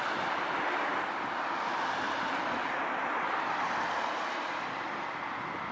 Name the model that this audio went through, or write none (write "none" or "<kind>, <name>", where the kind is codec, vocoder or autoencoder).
vocoder, BigVGAN v2